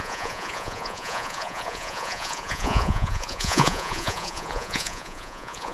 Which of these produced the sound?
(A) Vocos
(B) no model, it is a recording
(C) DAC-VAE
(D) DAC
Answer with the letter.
A